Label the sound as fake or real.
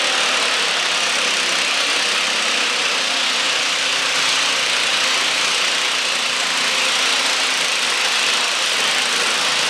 real